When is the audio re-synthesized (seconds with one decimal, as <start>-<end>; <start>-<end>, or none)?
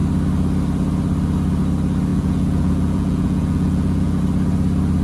2.1-4.2